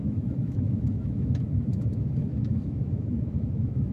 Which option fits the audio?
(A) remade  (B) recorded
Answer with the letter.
A